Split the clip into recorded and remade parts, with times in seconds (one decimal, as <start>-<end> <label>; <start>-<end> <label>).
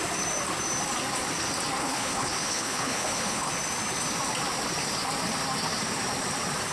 0.0-1.8 recorded; 1.8-3.5 remade; 3.5-6.7 recorded